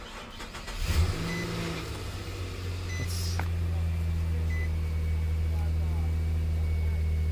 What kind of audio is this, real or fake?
real